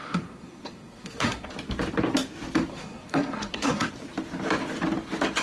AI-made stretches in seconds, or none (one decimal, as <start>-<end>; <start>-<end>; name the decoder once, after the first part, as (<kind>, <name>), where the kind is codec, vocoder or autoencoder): 0.0-1.5 (codec, SNAC); 2.7-3.9